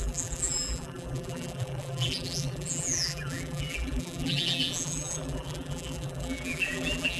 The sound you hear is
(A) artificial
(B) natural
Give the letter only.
A